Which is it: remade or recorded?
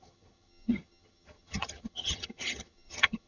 remade